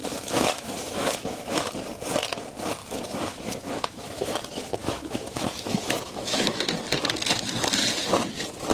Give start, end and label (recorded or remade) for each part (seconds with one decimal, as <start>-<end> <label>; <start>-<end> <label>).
0.0-1.7 remade; 1.7-2.8 recorded; 2.8-4.3 remade; 4.3-4.8 recorded; 4.8-6.6 remade; 6.6-8.7 recorded